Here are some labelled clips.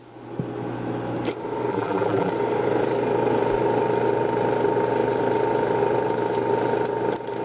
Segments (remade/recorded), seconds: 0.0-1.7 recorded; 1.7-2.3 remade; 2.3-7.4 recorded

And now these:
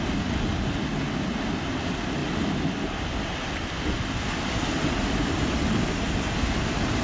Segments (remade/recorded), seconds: 0.0-7.0 recorded

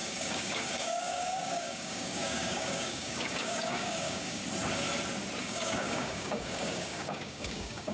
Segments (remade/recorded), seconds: 0.0-4.4 remade; 4.4-5.4 recorded; 5.4-7.9 remade